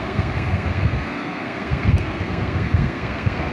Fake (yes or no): yes